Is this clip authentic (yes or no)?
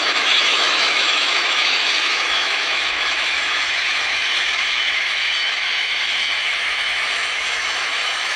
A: no